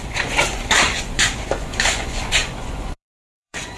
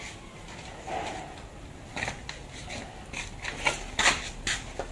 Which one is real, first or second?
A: second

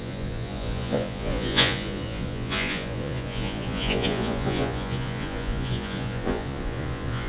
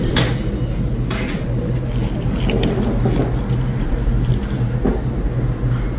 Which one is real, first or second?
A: second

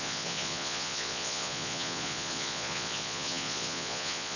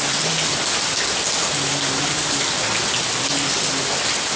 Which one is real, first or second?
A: second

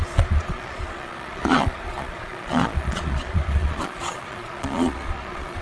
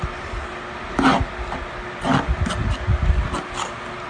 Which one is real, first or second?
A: second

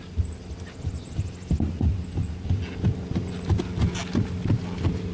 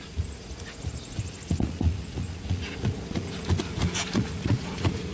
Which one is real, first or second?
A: first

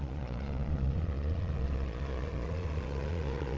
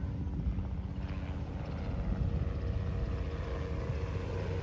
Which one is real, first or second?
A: second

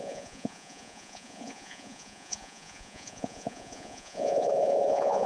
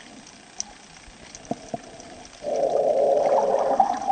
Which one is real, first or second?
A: second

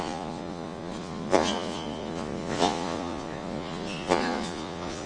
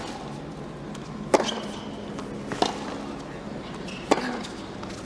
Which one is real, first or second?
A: second